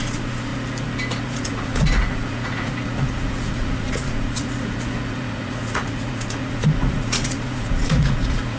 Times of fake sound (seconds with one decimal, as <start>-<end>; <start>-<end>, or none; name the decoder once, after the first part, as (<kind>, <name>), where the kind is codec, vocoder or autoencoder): 0.0-0.5 (vocoder, Vocos); 1.2-8.6